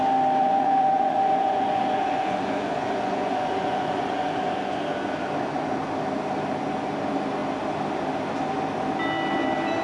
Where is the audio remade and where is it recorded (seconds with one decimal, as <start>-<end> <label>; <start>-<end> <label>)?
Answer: 0.0-0.4 recorded; 0.4-4.4 remade; 4.4-9.8 recorded